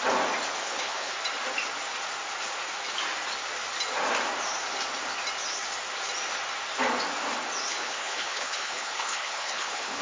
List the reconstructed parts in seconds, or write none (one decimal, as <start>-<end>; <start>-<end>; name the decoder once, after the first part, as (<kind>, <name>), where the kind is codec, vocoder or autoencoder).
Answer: 0.6-1.1 (codec, HILCodec); 7.7-10.0

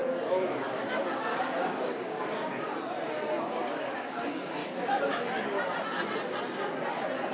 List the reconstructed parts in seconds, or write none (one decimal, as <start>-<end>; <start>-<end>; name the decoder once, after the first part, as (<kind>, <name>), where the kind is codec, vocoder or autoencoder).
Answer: 0.0-2.7 (codec, DAC); 3.4-4.6

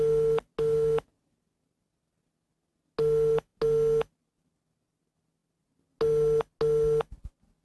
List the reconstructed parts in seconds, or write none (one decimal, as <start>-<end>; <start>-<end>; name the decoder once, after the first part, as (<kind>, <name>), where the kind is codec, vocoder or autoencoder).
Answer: none

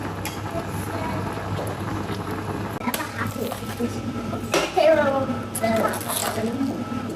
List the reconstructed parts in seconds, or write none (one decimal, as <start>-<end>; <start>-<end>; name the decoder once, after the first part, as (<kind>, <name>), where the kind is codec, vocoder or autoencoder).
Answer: none

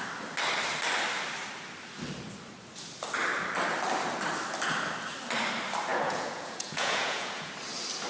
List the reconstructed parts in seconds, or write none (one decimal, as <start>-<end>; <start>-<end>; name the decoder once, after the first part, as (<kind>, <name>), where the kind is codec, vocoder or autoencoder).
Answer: 5.9-7.5 (vocoder, Vocos)

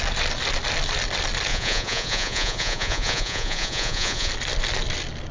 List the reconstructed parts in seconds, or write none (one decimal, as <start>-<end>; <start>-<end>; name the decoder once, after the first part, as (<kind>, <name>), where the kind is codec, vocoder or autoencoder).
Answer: 1.5-4.3 (vocoder, Vocos)

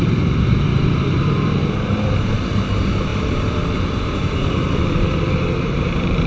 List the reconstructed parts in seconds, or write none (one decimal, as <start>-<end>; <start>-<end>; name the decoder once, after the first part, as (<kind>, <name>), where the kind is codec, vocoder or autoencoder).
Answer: 0.0-6.3 (vocoder, BigVGAN v2)

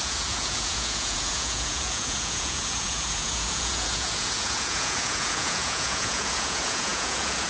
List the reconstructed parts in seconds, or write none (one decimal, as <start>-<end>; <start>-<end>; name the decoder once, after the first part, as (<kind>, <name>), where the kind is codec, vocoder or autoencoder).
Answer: 0.0-7.5 (vocoder, Vocos)